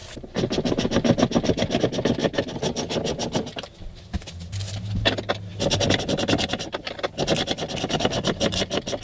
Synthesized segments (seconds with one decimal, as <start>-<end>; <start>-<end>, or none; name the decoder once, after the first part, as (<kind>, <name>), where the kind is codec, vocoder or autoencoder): none